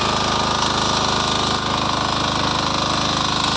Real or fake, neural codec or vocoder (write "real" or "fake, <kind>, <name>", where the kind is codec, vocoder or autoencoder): real